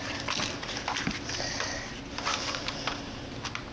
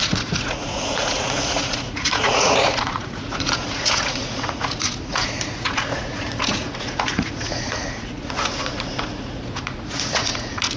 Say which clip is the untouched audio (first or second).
first